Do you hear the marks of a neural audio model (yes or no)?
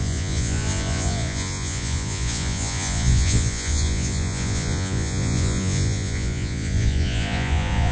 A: yes